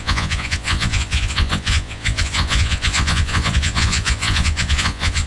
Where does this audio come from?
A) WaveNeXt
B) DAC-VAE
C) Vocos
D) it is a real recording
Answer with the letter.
C